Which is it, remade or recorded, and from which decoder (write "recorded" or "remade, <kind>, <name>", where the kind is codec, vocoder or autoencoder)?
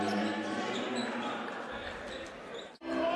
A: recorded